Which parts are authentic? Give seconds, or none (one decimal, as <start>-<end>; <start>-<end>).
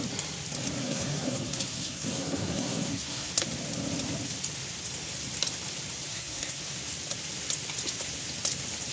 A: 0.0-0.8; 3.3-6.1; 6.6-8.9